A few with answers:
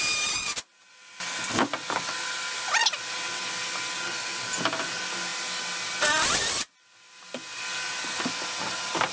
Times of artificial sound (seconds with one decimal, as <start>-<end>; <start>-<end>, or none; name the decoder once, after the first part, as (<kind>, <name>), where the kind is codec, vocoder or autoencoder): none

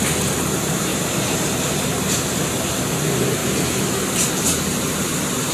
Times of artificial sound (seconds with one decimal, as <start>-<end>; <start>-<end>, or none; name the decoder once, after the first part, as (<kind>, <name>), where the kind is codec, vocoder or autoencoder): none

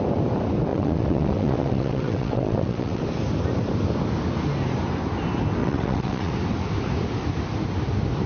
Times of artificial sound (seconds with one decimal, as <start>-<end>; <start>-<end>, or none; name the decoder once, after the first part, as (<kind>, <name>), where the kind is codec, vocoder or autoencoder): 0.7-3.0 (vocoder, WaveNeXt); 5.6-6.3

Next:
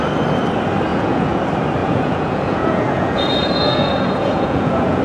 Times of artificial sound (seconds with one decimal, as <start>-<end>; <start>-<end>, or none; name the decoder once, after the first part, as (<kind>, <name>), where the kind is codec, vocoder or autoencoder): 0.9-1.4 (vocoder, Vocos); 1.8-5.0

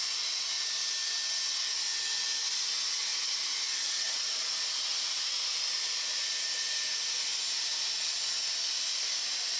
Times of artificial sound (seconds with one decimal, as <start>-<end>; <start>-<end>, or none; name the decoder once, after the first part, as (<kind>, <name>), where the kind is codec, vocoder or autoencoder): 3.1-7.4 (vocoder, Vocos)

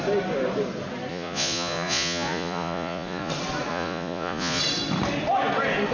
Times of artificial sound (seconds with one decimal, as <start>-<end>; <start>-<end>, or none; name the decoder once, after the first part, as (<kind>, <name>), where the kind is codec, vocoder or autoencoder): 1.1-3.3 (vocoder, Vocos); 3.7-4.6

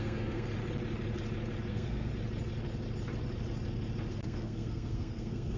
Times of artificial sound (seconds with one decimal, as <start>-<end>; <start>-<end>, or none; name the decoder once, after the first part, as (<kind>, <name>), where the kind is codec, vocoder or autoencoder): 0.0-0.5 (codec, SNAC); 1.7-2.1; 4.1-5.6

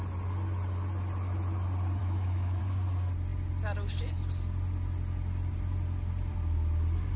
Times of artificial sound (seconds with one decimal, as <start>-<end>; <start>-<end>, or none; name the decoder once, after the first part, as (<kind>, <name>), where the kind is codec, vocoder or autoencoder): 2.0-2.6 (autoencoder, DAC-VAE)